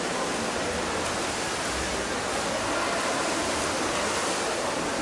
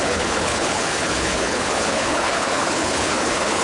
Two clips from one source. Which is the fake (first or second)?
second